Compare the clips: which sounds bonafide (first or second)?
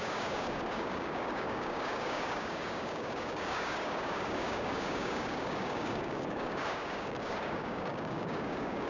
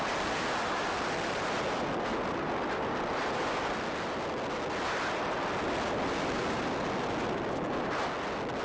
second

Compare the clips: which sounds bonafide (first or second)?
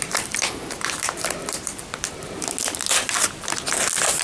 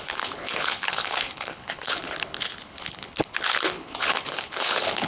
first